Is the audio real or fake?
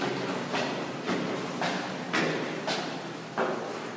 real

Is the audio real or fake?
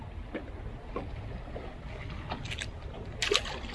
real